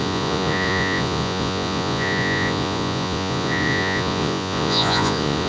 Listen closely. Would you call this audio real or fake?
fake